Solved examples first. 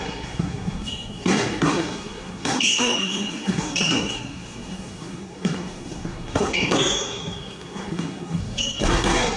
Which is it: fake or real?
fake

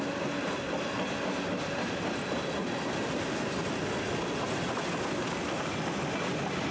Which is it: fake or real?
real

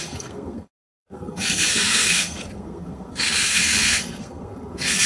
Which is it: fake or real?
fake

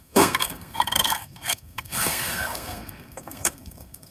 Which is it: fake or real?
fake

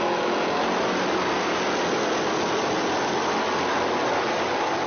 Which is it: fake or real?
real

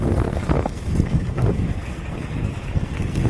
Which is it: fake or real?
fake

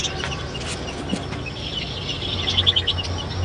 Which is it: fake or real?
real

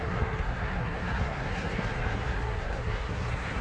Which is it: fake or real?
fake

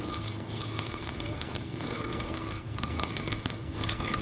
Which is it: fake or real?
fake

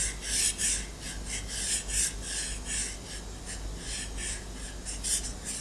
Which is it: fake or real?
real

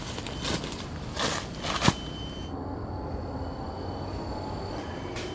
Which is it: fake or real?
real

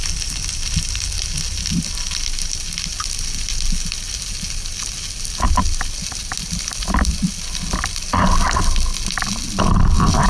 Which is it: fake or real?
real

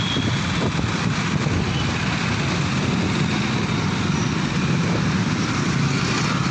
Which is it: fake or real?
real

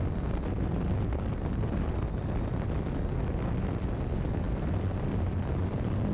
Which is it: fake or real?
real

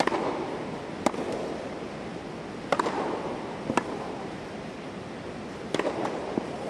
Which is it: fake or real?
real